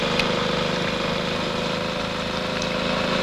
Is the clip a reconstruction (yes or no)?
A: no